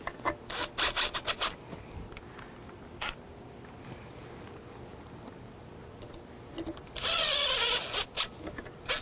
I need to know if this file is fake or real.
real